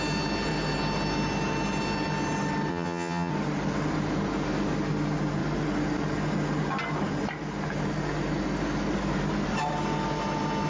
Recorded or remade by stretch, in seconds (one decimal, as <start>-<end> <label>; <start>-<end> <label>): 0.0-2.7 recorded; 2.7-3.3 remade; 3.3-10.7 recorded